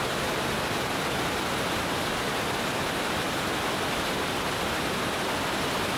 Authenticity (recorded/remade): recorded